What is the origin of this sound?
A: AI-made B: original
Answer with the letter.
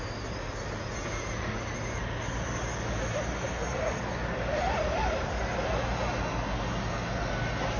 B